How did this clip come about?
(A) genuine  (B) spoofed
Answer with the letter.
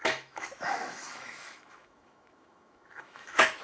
B